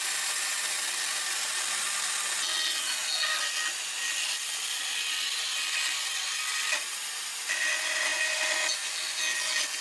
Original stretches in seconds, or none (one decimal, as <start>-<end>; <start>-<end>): 0.0-9.8